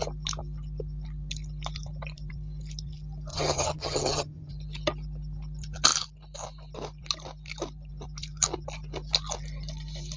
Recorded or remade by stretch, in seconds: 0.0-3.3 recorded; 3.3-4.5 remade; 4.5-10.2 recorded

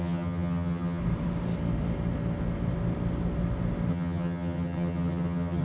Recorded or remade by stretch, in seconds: 0.0-1.0 remade; 1.0-3.9 recorded; 3.9-5.6 remade

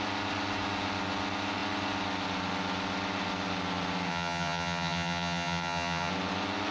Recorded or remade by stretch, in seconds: 0.0-4.1 recorded; 4.1-6.1 remade; 6.1-6.7 recorded

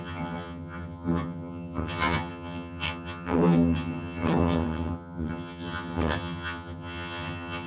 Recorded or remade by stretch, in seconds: 0.0-7.7 remade

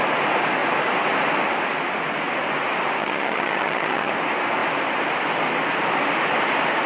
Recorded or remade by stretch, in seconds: 0.0-3.0 recorded; 3.0-4.1 remade; 4.1-6.9 recorded

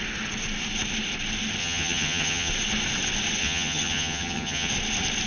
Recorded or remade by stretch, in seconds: 0.0-1.6 recorded; 1.6-2.5 remade; 2.5-3.4 recorded; 3.4-4.7 remade; 4.7-5.3 recorded